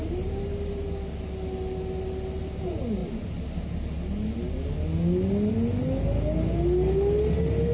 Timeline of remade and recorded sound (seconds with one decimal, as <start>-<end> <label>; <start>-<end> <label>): 0.0-7.7 recorded